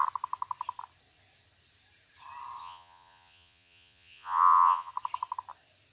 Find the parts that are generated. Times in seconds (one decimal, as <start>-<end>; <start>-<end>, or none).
2.6-4.9